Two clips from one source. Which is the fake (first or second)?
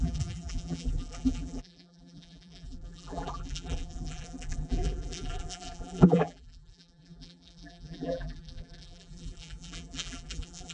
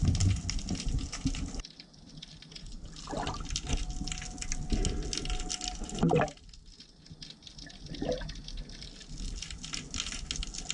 first